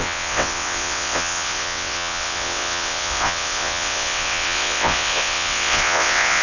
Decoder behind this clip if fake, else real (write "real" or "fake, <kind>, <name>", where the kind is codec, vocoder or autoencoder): fake, vocoder, WaveNeXt